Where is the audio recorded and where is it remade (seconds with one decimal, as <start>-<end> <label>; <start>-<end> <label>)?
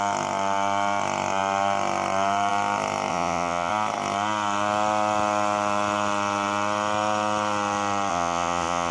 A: 0.0-3.1 recorded; 3.1-3.7 remade; 3.7-8.1 recorded; 8.1-8.9 remade